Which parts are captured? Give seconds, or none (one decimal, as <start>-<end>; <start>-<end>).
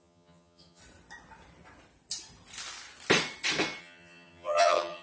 0.8-3.8